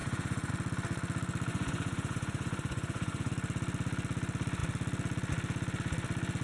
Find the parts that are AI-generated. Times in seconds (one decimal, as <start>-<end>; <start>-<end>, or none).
0.0-0.5; 1.5-3.3